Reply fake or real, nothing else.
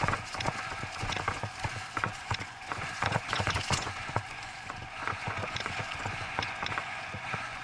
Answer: fake